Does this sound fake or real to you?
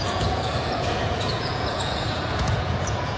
fake